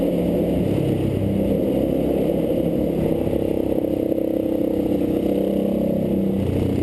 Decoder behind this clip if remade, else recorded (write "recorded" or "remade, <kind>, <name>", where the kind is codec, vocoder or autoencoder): recorded